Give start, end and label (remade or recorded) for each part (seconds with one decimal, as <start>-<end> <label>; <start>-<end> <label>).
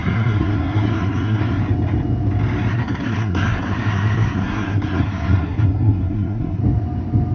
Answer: 0.0-1.6 remade; 1.6-2.7 recorded; 2.7-6.6 remade; 6.6-7.3 recorded